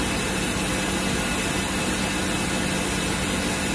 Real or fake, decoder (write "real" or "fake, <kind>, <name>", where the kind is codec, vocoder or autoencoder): real